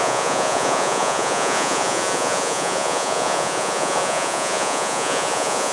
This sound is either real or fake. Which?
fake